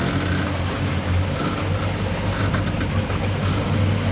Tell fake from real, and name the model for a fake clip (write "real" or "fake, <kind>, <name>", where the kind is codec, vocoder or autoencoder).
real